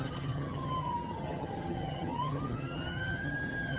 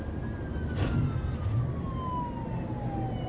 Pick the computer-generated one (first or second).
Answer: first